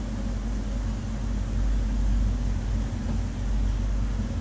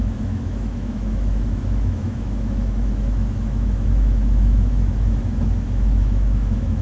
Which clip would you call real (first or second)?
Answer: first